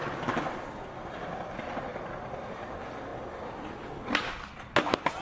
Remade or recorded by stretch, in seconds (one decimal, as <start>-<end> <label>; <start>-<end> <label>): 0.0-5.2 recorded